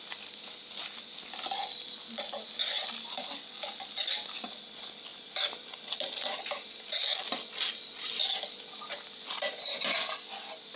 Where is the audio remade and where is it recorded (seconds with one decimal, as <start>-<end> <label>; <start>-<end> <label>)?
0.0-10.8 recorded